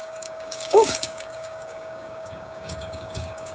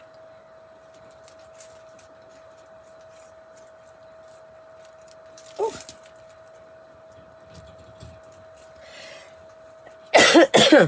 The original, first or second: second